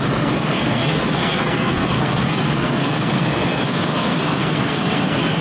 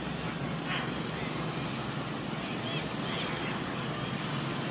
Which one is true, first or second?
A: second